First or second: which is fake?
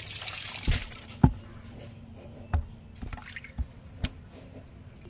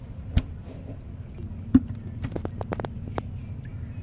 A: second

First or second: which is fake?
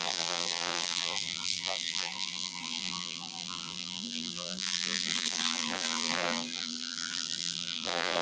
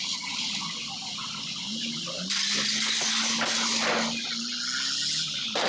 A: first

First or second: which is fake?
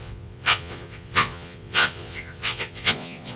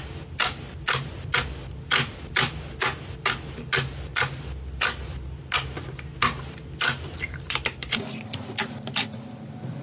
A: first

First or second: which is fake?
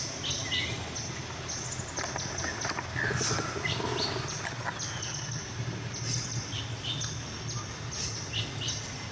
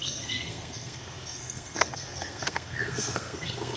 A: second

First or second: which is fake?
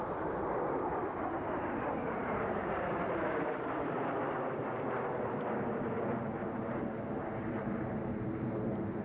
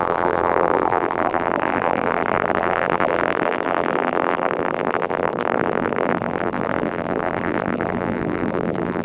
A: second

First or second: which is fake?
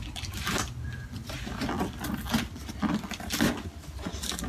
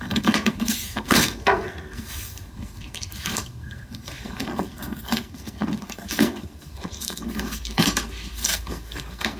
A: second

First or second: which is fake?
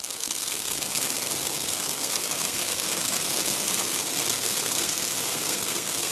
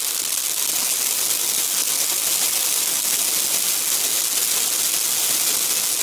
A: first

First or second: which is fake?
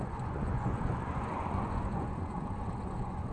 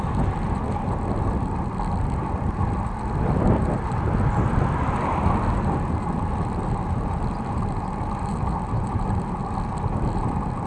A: first